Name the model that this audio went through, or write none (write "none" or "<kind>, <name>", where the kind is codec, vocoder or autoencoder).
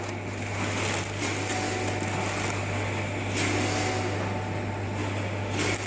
none